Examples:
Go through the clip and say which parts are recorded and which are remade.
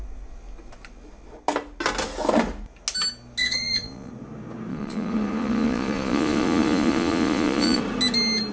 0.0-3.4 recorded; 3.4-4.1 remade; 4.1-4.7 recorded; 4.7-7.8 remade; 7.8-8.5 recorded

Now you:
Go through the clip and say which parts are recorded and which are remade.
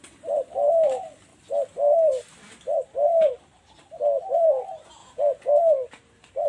0.0-5.0 recorded; 5.0-5.5 remade; 5.5-6.5 recorded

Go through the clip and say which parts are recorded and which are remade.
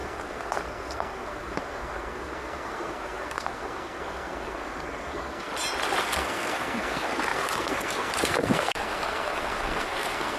0.0-5.5 remade; 5.5-6.0 recorded; 6.0-10.4 remade